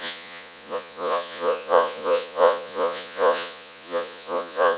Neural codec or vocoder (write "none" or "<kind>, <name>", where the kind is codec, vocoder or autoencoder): vocoder, Vocos